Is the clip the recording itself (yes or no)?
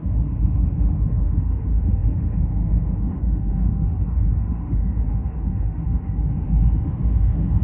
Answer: no